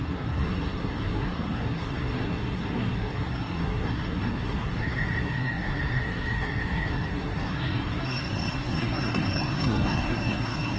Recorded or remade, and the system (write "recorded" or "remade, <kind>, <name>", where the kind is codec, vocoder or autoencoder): remade, codec, SNAC